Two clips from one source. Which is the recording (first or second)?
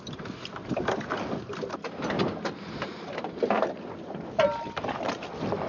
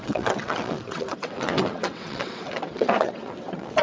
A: first